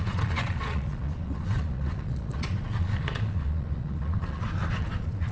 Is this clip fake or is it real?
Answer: fake